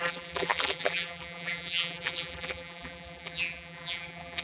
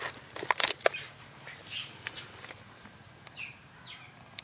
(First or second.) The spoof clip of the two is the first